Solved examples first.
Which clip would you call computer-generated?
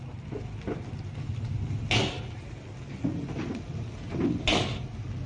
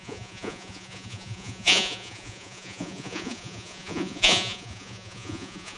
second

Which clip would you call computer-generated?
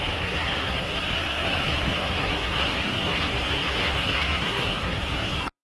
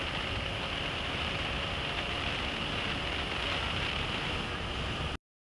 first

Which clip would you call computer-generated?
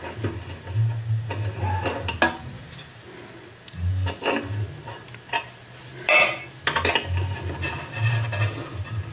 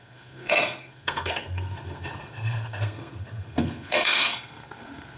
second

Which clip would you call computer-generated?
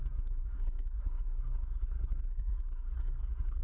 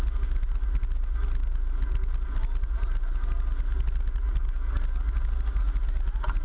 first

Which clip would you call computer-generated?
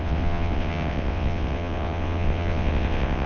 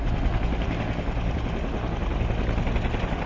first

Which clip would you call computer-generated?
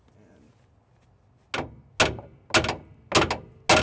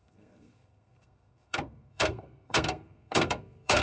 second